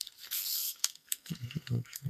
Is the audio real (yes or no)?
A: no